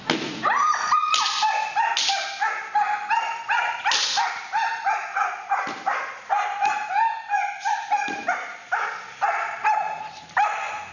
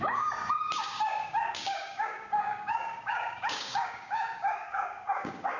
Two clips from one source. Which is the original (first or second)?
first